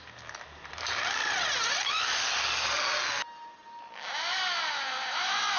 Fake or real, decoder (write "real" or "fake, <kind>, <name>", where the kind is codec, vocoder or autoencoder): real